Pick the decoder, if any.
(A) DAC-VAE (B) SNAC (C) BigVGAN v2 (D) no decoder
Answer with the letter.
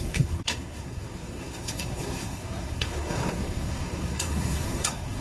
B